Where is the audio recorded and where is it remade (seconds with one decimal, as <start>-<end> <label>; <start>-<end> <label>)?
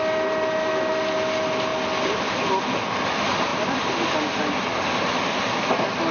0.0-6.1 recorded